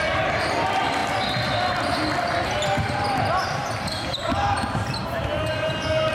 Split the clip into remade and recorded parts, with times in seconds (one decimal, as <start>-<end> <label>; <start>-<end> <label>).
0.0-1.0 remade; 1.0-3.4 recorded; 3.4-5.0 remade; 5.0-6.1 recorded